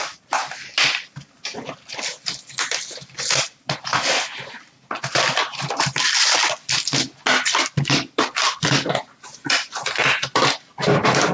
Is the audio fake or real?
real